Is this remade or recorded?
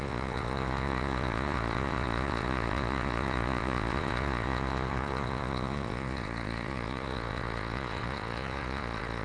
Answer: remade